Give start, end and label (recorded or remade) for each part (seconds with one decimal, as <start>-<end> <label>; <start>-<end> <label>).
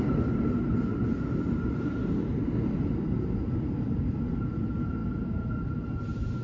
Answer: 0.0-6.4 recorded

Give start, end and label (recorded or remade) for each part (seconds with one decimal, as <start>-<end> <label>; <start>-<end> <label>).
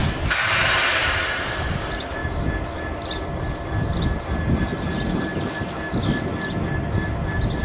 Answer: 0.0-7.6 recorded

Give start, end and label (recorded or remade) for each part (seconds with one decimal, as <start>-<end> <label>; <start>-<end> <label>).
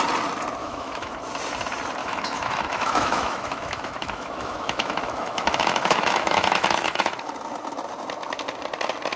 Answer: 0.0-0.6 recorded; 0.6-1.1 remade; 1.1-2.0 recorded; 2.0-7.3 remade; 7.3-9.2 recorded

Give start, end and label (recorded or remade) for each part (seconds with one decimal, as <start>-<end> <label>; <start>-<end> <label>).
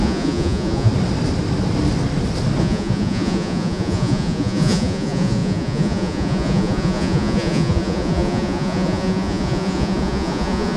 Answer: 0.0-0.9 remade; 0.9-2.6 recorded; 2.6-10.8 remade